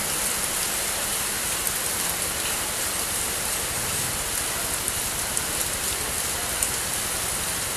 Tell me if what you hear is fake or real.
real